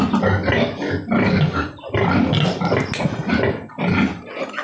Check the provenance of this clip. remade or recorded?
recorded